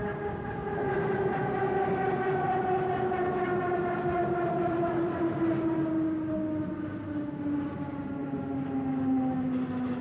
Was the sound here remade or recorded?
recorded